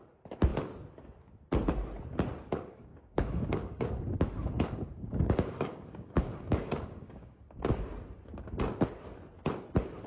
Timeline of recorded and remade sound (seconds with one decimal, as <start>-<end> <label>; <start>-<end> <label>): 0.0-2.9 recorded; 2.9-7.7 remade; 7.7-10.1 recorded